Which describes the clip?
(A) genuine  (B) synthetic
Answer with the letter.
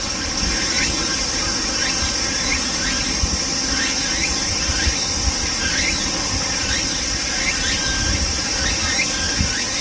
A